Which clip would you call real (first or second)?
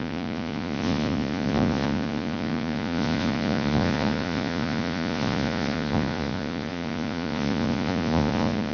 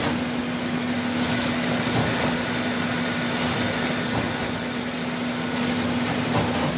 second